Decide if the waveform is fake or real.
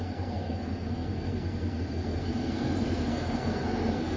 fake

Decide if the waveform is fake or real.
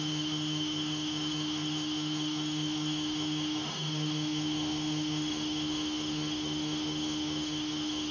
fake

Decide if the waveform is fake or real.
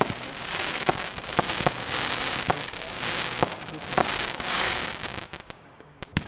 fake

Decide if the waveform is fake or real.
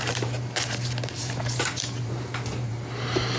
fake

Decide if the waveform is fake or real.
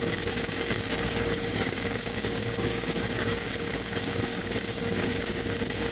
fake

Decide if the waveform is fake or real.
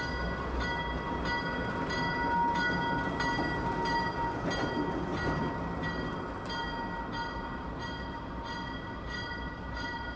real